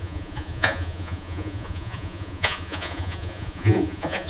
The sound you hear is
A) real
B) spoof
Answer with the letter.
B